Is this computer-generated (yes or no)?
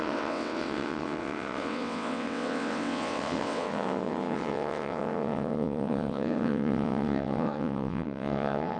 yes